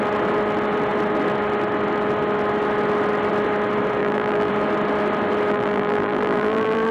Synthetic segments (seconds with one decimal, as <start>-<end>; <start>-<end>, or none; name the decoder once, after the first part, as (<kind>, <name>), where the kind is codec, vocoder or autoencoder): 4.0-4.5 (vocoder, BigVGAN v2); 5.5-6.9